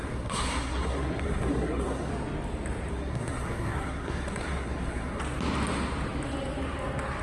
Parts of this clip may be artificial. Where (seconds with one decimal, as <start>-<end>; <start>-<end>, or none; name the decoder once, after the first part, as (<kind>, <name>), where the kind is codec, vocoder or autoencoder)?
0.0-2.1 (codec, SNAC); 2.9-5.2